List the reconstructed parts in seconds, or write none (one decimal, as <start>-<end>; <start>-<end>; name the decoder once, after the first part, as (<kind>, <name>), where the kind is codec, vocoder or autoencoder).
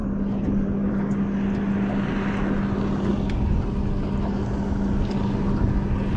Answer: none